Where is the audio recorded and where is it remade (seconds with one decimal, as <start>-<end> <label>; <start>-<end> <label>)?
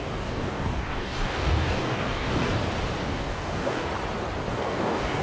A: 0.0-2.5 remade; 2.5-3.0 recorded; 3.0-3.9 remade; 3.9-4.5 recorded; 4.5-5.2 remade